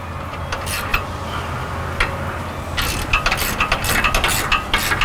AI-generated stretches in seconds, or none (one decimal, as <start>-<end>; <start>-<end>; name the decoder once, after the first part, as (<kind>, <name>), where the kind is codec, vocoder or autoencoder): none